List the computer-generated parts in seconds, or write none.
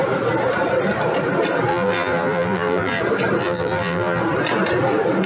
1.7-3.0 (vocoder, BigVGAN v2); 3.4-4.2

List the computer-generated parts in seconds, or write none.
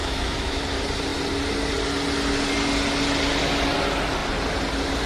0.0-0.6 (autoencoder, DAC-VAE)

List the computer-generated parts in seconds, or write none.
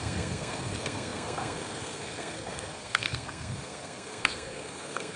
0.0-5.2 (codec, SNAC)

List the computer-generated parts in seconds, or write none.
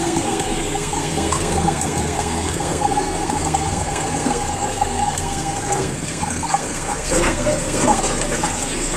0.0-9.0 (codec, SNAC)